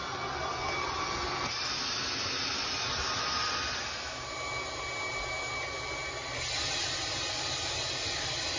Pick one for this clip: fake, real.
real